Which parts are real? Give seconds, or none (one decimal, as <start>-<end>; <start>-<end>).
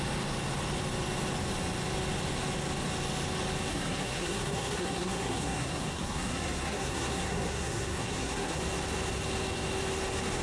0.0-3.7; 8.6-10.4